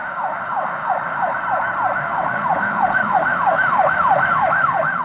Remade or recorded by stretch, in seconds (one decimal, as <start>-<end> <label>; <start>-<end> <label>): 0.0-1.4 remade; 1.4-2.0 recorded; 2.0-5.0 remade